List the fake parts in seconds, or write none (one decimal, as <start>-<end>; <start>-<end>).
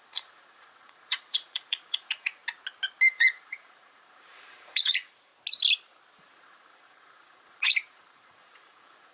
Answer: 0.0-2.4; 3.1-5.3; 6.2-9.1